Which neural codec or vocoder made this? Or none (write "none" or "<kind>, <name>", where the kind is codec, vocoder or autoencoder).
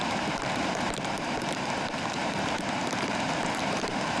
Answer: vocoder, BigVGAN v2